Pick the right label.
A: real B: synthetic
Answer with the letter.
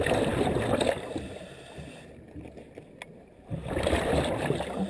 A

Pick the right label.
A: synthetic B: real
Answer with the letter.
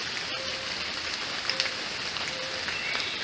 A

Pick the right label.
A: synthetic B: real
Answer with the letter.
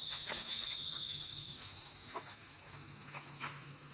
A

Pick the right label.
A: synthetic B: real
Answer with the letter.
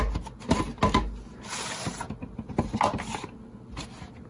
B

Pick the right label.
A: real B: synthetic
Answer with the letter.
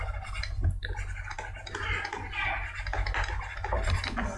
A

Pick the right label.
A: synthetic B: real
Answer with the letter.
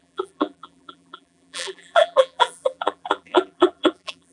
A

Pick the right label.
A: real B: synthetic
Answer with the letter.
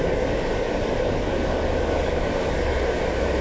B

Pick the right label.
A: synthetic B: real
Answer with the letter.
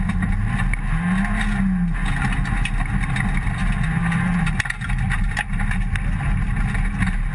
B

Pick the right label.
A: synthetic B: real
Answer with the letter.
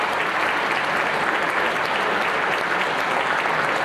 B